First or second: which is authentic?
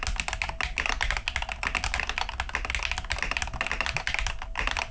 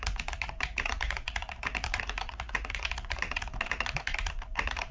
first